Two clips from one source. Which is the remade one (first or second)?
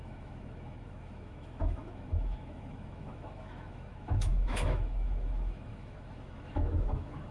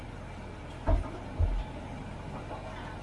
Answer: first